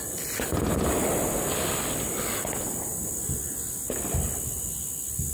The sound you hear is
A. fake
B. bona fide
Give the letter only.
B